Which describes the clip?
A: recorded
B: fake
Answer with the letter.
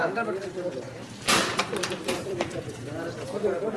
A